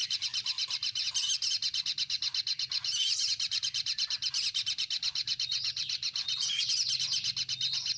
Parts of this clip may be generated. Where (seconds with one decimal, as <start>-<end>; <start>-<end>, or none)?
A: 0.0-1.1; 3.1-6.7